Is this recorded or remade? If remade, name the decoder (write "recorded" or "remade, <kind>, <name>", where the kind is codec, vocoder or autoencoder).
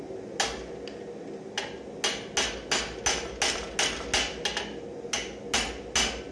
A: recorded